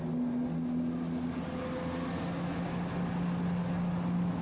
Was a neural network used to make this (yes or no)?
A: no